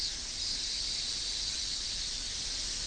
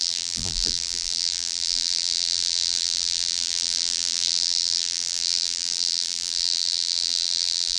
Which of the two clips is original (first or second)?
first